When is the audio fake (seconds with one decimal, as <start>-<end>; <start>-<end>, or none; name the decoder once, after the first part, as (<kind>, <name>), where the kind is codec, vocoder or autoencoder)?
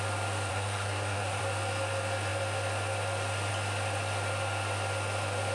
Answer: 0.5-1.4 (codec, SNAC)